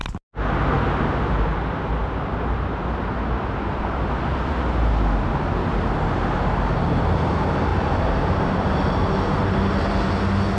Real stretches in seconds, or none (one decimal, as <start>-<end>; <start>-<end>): 0.0-10.6